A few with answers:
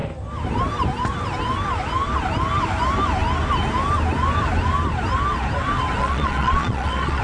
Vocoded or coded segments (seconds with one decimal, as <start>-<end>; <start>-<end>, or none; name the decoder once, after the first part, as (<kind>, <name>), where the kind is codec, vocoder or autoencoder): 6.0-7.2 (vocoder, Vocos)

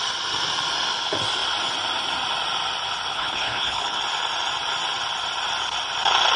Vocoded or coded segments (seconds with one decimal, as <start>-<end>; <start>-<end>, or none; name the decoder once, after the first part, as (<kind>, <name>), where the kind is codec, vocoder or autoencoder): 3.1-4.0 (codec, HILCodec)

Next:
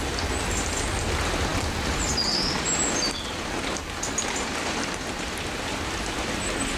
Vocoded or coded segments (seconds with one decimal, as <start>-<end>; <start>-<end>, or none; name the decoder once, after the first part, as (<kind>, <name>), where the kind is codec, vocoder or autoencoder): none